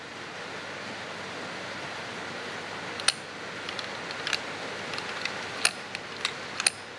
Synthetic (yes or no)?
no